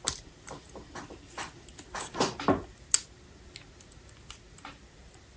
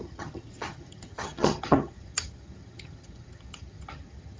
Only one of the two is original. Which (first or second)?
first